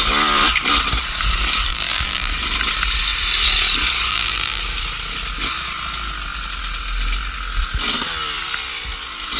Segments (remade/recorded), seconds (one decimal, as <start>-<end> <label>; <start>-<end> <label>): 0.0-1.7 recorded; 1.7-2.3 remade; 2.3-4.1 recorded; 4.1-4.6 remade; 4.6-9.4 recorded